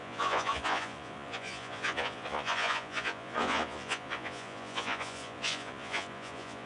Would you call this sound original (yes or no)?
no